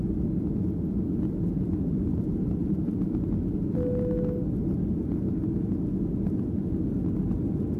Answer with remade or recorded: recorded